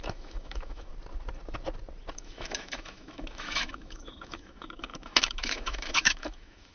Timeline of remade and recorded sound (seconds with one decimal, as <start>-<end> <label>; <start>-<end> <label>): 0.0-0.9 remade; 0.9-2.1 recorded; 2.1-6.7 remade